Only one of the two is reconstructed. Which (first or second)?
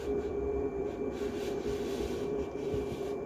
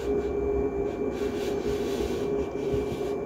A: first